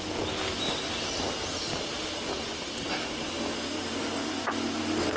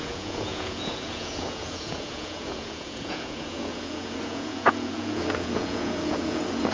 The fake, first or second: second